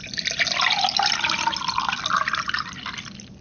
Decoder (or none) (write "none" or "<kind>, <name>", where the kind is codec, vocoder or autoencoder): none